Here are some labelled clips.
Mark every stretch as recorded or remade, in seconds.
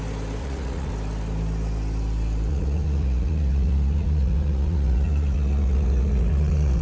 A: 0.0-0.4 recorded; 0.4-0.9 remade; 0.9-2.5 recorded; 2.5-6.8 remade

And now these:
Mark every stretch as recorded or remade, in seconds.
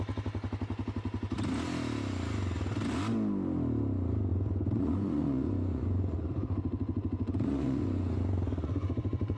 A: 0.0-4.3 recorded; 4.3-9.4 remade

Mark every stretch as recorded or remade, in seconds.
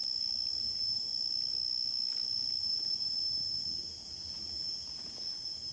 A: 0.0-0.6 recorded; 0.6-1.1 remade; 1.1-2.6 recorded; 2.6-5.7 remade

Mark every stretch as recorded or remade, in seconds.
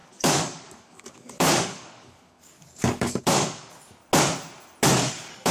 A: 0.0-4.0 remade; 4.0-5.1 recorded; 5.1-5.5 remade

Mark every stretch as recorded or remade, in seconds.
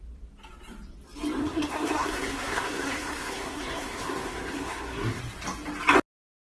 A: 0.0-1.4 recorded; 1.4-5.2 remade; 5.2-6.4 recorded